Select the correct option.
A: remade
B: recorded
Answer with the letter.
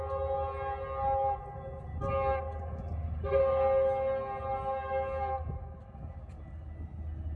B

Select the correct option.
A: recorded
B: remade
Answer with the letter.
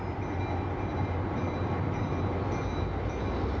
A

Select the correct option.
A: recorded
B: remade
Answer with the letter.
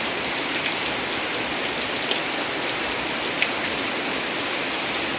A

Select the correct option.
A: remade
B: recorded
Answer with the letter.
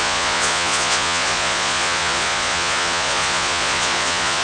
A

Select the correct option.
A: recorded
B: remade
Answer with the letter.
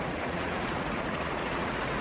B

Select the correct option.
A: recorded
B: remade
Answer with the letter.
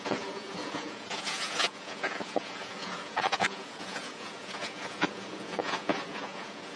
B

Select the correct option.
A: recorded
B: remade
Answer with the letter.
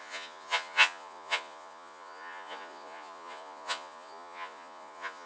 B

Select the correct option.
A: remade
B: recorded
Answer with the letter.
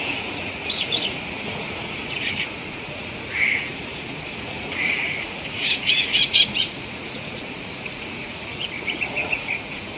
A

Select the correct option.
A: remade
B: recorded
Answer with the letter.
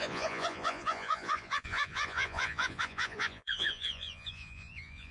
A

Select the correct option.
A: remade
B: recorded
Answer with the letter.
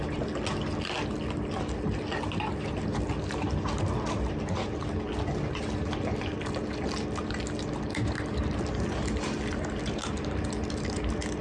B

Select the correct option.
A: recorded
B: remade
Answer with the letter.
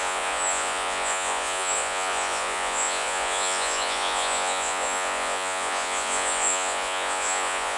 B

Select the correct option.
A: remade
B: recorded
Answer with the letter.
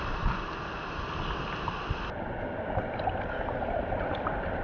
B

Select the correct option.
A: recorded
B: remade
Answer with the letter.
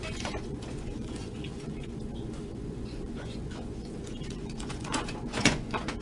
B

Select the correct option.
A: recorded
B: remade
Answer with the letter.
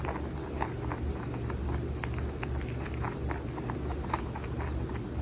A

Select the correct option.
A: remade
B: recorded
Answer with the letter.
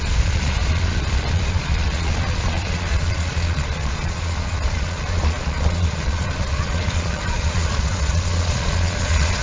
A